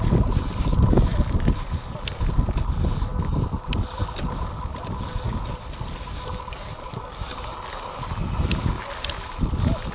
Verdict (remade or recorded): recorded